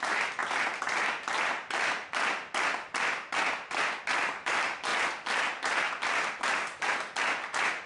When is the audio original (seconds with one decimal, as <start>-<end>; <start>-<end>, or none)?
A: 0.0-7.9